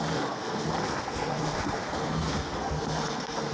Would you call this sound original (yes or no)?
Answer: no